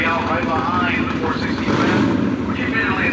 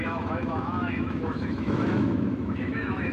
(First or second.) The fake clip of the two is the second